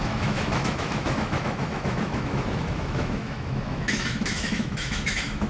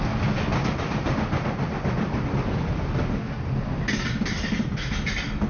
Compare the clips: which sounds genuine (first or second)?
second